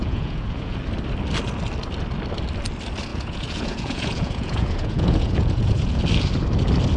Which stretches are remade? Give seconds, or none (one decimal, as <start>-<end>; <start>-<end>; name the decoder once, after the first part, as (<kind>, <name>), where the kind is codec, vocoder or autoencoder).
0.0-0.8 (vocoder, Vocos); 3.1-6.0

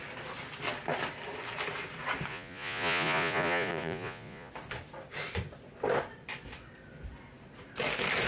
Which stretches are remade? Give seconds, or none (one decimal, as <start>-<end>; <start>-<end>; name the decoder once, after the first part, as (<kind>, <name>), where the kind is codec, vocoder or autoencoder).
2.3-4.5 (vocoder, Vocos)

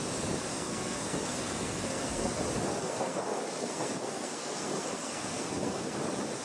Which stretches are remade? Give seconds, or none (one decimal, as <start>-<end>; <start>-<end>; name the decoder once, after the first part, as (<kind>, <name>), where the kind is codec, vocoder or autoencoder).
0.5-2.4 (codec, SNAC); 2.8-6.0

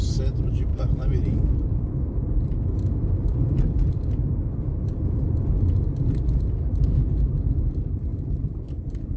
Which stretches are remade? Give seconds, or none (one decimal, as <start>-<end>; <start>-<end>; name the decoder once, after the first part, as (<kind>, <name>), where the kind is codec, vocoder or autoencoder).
0.7-5.7 (vocoder, BigVGAN v2)

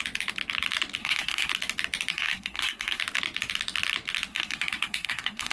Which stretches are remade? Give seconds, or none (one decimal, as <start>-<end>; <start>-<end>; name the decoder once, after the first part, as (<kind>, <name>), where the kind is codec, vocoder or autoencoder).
1.0-1.5 (codec, SNAC); 2.1-3.0; 4.3-5.5